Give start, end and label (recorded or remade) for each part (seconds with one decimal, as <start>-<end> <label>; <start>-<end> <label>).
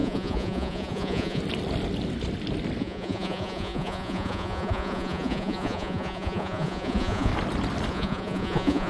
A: 0.0-1.4 remade; 1.4-2.8 recorded; 2.8-7.3 remade; 7.3-7.9 recorded; 7.9-8.9 remade